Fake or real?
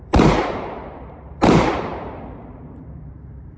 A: fake